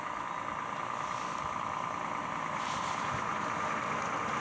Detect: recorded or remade recorded